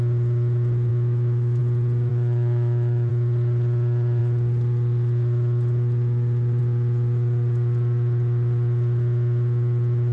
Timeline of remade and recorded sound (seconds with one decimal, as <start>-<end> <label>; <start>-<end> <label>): 0.0-0.9 recorded; 0.9-1.6 remade; 1.6-2.1 recorded; 2.1-3.1 remade; 3.1-10.1 recorded